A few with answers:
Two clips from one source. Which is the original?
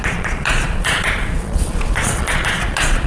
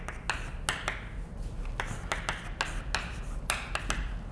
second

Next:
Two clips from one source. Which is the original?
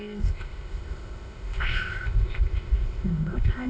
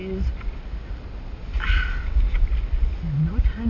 second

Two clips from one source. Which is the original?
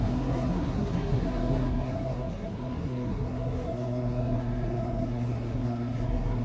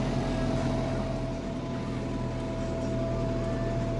second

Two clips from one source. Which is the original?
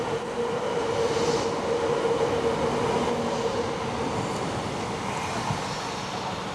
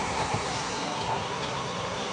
first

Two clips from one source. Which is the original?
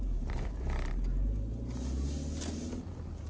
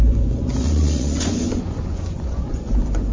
first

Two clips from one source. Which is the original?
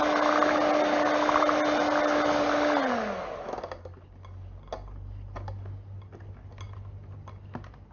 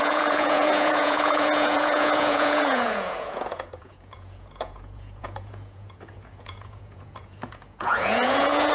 first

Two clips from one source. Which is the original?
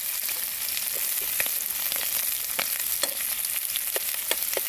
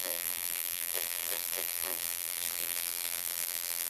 first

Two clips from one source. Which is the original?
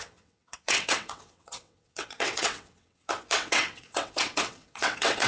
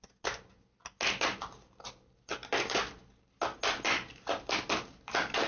second